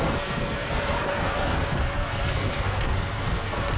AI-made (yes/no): yes